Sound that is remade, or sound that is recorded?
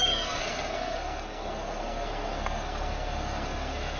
remade